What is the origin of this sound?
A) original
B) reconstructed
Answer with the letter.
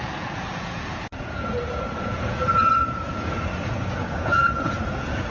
B